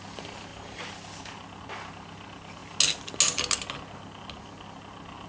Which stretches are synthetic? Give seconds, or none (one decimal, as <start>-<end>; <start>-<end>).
none

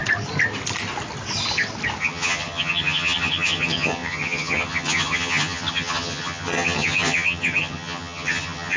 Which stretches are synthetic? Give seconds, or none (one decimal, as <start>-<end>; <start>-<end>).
2.0-8.8

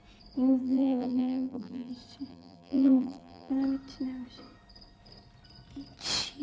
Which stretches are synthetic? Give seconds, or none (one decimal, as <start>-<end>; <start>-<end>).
0.6-1.9; 2.3-3.5

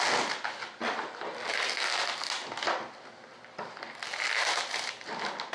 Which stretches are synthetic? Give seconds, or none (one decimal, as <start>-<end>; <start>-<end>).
4.1-5.1

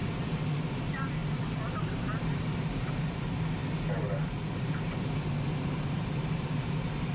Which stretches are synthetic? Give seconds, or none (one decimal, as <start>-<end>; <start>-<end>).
0.7-1.2; 1.8-3.6; 4.6-7.1

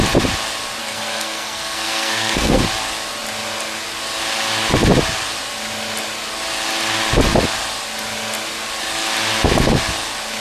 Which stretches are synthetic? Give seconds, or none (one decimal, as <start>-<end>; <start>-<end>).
0.8-2.6

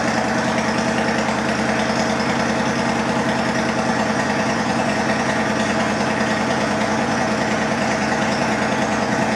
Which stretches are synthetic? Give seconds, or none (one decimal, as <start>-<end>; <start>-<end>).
3.9-9.4

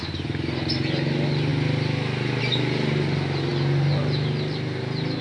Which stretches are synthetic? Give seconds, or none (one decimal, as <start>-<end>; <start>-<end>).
none